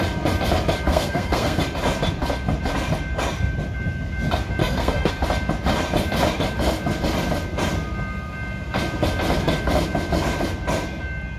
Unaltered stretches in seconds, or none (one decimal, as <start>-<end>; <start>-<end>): 0.0-0.9; 1.6-4.6; 5.1-11.4